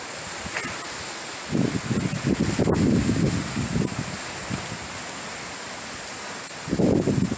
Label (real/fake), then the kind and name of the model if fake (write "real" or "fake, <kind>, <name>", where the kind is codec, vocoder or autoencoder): real